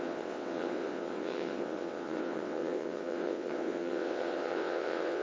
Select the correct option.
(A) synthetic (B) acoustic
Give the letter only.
A